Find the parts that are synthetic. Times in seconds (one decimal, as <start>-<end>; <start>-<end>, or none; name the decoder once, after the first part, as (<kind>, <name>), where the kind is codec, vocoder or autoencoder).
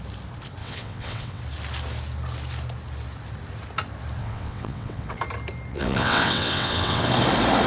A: 0.6-1.4 (vocoder, WaveNeXt); 4.2-5.2; 5.7-7.1